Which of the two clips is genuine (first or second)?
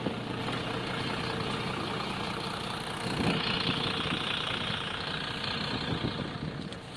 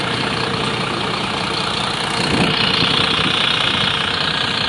first